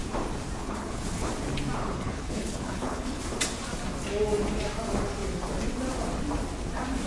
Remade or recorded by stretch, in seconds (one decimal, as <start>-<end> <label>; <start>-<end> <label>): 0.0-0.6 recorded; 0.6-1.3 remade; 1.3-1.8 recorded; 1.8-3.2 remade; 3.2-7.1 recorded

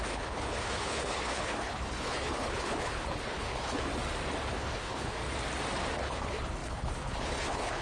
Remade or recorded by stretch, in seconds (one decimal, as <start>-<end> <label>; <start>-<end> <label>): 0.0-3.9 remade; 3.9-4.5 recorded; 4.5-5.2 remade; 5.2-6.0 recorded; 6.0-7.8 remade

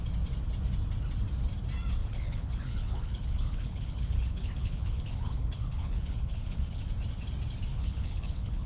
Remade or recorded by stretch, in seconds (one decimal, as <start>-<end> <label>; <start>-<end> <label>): 0.0-2.0 recorded; 2.0-6.8 remade; 6.8-7.7 recorded; 7.7-8.7 remade